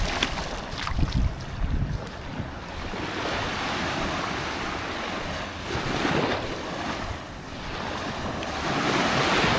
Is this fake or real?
real